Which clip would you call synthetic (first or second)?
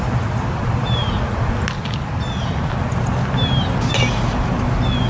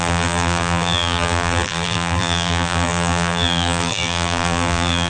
second